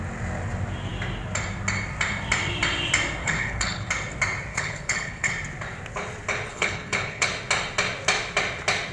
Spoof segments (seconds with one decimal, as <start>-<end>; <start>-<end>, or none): 3.2-3.9; 4.5-5.3; 6.5-7.3